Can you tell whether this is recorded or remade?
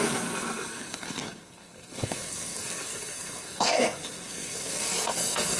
remade